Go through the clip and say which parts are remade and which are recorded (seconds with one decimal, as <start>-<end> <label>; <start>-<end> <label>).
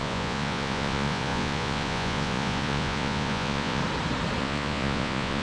0.0-3.8 remade; 3.8-4.4 recorded; 4.4-5.4 remade